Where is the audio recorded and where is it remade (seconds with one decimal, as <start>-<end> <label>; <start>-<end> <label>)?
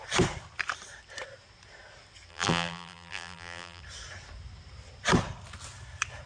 0.0-2.3 recorded; 2.3-3.8 remade; 3.8-6.3 recorded